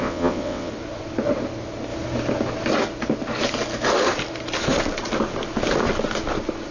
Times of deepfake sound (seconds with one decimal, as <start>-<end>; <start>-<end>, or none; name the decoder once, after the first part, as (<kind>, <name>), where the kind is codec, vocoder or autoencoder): 0.0-0.7 (vocoder, WaveNeXt)